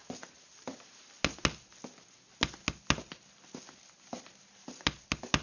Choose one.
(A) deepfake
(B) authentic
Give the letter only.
B